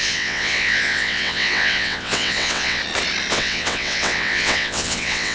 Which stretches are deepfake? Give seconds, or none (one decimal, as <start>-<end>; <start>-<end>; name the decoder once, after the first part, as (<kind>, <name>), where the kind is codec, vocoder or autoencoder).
0.0-2.8 (vocoder, WaveNeXt); 3.3-5.3